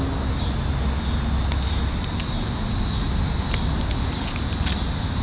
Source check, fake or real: real